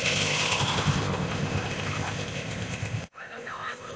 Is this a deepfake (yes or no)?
yes